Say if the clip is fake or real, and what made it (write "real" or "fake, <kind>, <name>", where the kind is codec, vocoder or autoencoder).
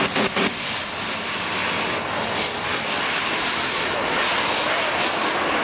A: real